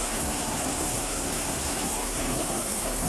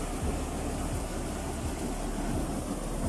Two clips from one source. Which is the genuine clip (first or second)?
second